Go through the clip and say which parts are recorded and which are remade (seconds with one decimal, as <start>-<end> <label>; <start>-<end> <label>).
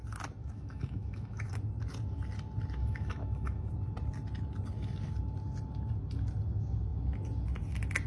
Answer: 0.0-0.4 recorded; 0.4-1.5 remade; 1.5-2.8 recorded; 2.8-3.7 remade; 3.7-8.1 recorded